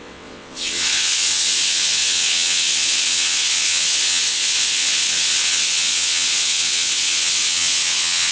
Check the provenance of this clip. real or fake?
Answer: fake